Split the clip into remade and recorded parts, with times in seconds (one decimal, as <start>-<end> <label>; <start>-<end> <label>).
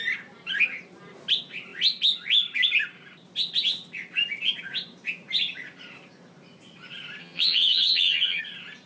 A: 0.0-7.2 recorded; 7.2-8.4 remade; 8.4-8.9 recorded